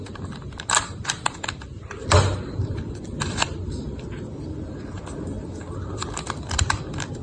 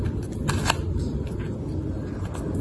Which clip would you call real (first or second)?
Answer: second